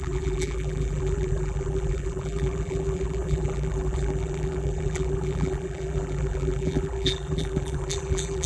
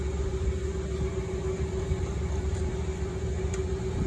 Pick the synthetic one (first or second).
first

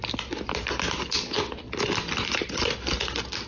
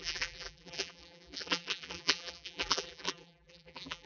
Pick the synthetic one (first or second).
second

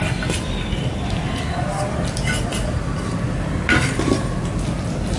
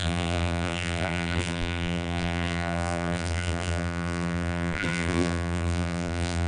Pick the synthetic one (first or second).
second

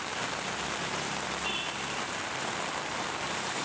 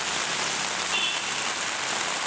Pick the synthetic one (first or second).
first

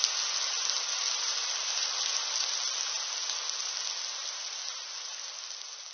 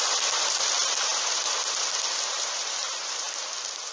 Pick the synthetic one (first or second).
second